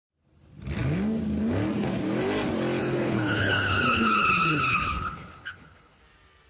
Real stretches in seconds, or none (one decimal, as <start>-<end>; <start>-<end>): 0.0-2.8; 6.0-6.5